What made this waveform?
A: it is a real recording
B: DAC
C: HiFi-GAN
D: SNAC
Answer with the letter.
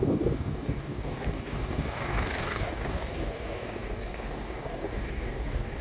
B